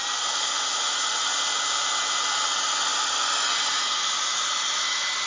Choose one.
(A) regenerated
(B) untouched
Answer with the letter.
B